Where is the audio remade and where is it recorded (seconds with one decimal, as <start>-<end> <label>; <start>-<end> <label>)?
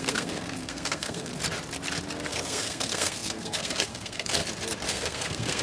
0.0-1.3 remade; 1.3-2.3 recorded; 2.3-4.4 remade; 4.4-4.9 recorded; 4.9-5.6 remade